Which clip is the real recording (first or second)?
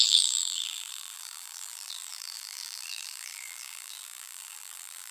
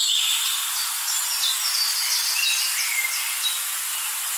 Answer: second